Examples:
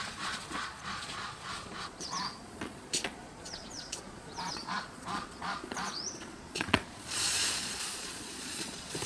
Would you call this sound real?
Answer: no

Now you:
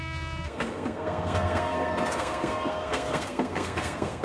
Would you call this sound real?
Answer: no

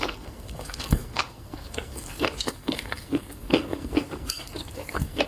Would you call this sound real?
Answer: no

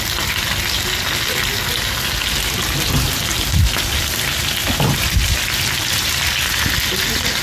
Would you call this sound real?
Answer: yes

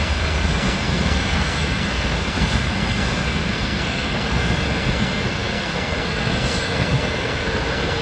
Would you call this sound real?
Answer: no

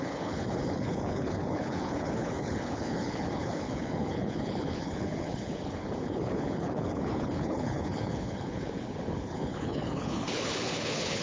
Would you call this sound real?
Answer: no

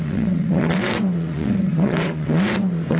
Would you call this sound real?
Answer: no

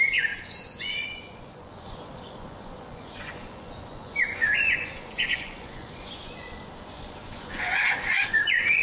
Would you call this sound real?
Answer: no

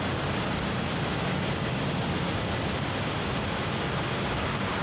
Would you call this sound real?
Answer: yes